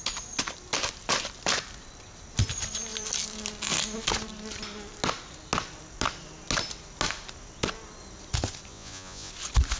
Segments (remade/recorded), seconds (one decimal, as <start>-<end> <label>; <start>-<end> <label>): 0.0-8.7 recorded; 8.7-9.3 remade; 9.3-9.8 recorded